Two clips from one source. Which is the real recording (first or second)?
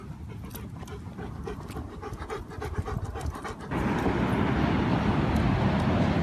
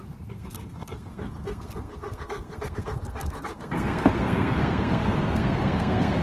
first